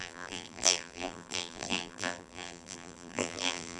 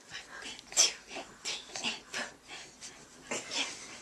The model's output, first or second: first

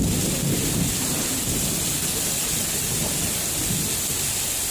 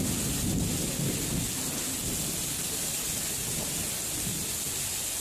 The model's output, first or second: first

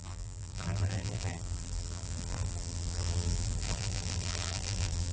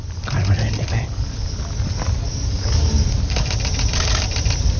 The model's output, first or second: first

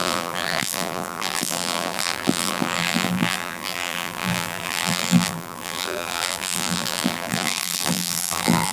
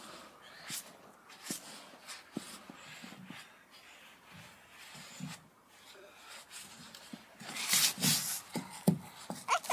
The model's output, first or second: first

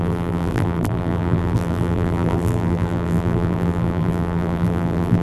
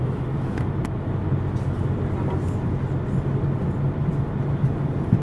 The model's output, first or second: first